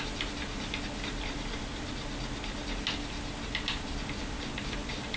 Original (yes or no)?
yes